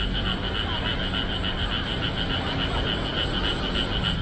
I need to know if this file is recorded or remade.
recorded